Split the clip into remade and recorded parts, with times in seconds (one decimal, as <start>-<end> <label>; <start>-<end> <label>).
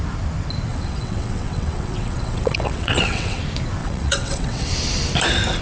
0.0-0.7 recorded; 0.7-3.4 remade; 3.4-3.8 recorded; 3.8-4.7 remade; 4.7-5.6 recorded